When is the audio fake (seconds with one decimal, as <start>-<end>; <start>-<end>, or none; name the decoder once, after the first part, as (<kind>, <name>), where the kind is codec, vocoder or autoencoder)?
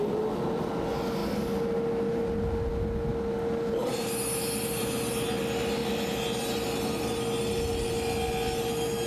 none